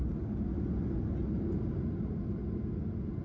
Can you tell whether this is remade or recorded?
recorded